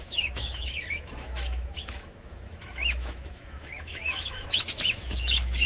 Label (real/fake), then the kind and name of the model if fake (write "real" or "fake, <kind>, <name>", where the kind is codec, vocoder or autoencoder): fake, autoencoder, DAC-VAE